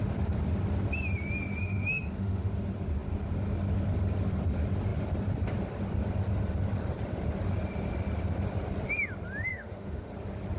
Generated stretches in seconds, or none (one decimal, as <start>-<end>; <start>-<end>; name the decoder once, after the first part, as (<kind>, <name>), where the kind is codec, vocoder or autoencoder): 1.6-2.5 (autoencoder, DAC-VAE); 9.5-10.1